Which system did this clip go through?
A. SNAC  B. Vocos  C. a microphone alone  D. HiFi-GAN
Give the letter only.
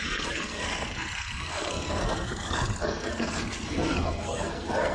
A